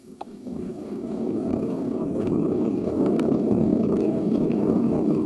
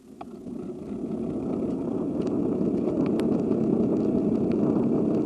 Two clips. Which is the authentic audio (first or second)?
second